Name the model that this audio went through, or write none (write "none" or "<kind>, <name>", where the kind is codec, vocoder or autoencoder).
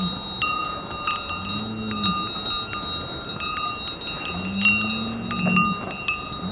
none